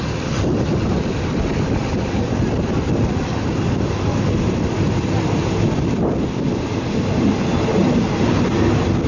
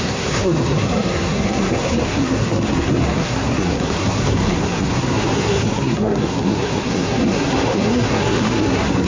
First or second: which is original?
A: first